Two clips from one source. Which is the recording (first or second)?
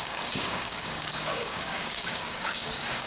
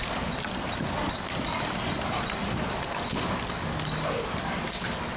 second